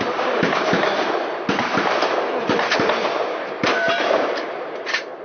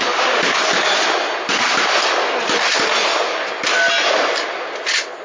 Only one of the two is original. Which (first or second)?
second